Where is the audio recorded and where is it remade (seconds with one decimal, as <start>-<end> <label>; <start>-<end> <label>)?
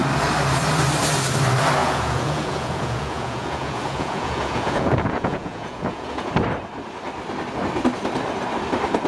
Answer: 0.0-1.8 recorded; 1.8-6.3 remade; 6.3-9.1 recorded